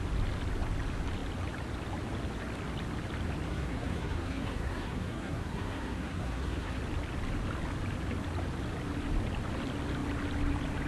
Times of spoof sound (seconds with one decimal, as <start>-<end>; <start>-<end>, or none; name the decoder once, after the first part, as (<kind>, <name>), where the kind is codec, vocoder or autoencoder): 3.5-6.8 (codec, SNAC)